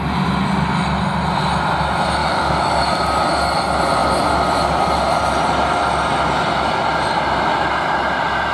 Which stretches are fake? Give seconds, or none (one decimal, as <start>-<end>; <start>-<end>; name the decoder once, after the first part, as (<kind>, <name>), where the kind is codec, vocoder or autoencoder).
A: 2.2-2.8 (codec, DAC)